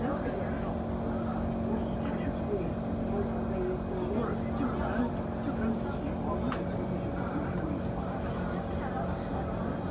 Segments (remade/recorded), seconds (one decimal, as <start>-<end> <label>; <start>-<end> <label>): 0.0-9.9 recorded